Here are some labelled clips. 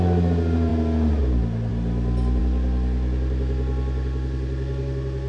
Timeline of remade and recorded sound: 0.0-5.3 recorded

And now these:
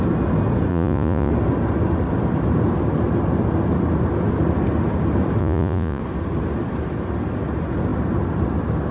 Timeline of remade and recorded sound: 0.0-0.7 recorded; 0.7-1.3 remade; 1.3-5.4 recorded; 5.4-6.0 remade; 6.0-8.9 recorded

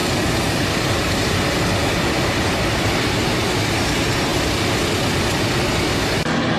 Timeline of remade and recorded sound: 0.0-1.6 remade; 1.6-6.6 recorded

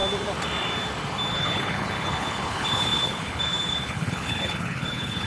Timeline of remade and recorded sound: 0.0-1.3 recorded; 1.3-5.3 remade